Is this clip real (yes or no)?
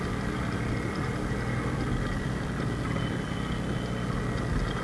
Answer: yes